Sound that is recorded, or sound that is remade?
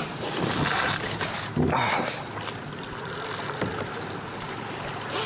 recorded